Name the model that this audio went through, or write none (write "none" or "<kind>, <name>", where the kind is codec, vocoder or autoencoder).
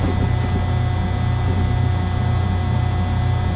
none